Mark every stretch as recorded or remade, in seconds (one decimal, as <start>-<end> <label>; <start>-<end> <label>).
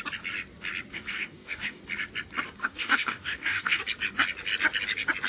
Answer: 0.0-0.9 recorded; 0.9-1.8 remade; 1.8-2.6 recorded; 2.6-3.8 remade; 3.8-5.3 recorded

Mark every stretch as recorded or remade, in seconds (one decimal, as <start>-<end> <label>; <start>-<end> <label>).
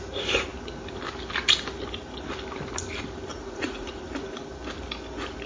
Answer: 0.0-3.3 recorded; 3.3-4.0 remade; 4.0-5.5 recorded